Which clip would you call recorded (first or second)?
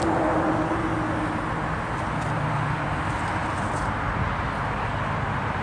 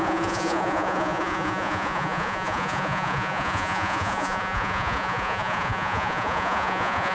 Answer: first